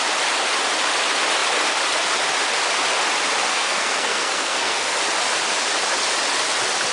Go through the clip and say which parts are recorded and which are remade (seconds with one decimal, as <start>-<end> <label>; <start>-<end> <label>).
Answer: 0.0-3.5 recorded; 3.5-5.0 remade; 5.0-6.9 recorded